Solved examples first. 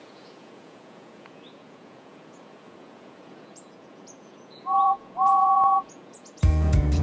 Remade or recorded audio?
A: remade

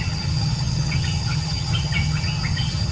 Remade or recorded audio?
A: remade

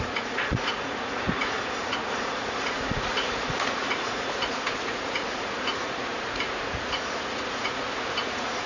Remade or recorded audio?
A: remade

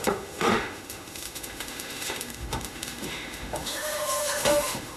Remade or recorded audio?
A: remade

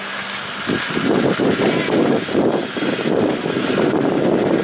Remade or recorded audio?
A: recorded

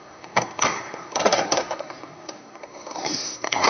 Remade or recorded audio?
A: remade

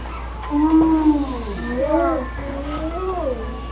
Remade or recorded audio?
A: recorded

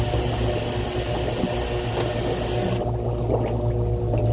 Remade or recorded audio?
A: recorded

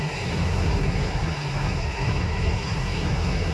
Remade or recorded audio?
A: remade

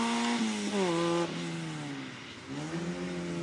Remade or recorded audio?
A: recorded